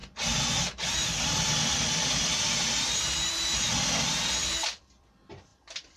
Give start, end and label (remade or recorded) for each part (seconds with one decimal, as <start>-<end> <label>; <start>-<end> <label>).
0.0-4.4 recorded; 4.4-4.9 remade; 4.9-5.5 recorded; 5.5-6.0 remade